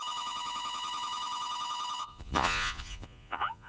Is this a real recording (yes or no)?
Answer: no